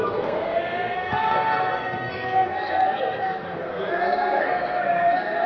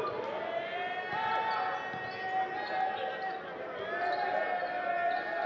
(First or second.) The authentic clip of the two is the second